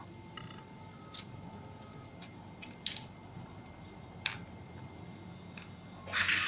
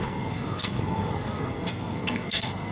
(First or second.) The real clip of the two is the first